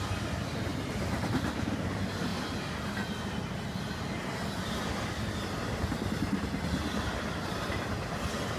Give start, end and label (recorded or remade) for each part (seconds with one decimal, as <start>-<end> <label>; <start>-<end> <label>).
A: 0.0-8.6 recorded